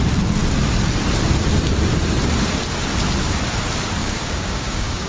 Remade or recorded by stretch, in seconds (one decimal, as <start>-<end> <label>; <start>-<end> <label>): 0.0-4.0 recorded; 4.0-5.1 remade